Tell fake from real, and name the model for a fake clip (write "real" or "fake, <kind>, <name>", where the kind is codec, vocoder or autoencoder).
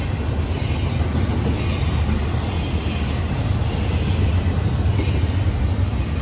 real